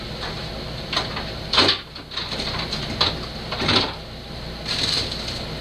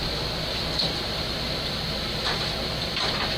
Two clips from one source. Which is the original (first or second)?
first